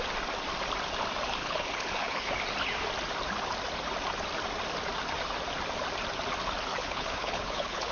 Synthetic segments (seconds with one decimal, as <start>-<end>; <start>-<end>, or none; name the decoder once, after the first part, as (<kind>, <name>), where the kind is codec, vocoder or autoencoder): 1.4-2.3 (codec, HILCodec); 6.7-7.9